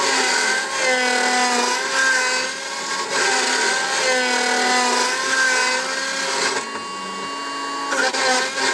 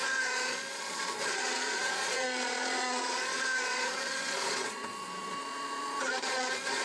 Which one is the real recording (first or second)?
first